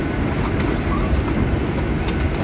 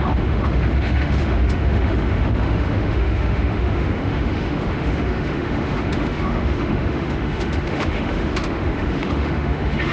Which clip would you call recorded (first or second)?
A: first